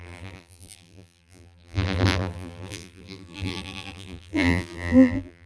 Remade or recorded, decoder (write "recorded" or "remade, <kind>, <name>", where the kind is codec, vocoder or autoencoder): remade, vocoder, BigVGAN v2